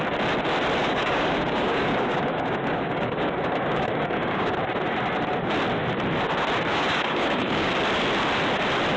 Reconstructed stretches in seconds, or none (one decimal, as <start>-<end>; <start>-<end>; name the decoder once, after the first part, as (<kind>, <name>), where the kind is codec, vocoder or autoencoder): 0.8-4.5 (codec, DAC); 6.7-7.7